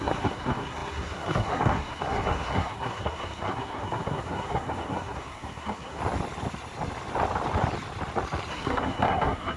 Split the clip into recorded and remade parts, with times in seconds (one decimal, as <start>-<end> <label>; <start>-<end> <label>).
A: 0.0-6.0 remade; 6.0-8.5 recorded; 8.5-9.6 remade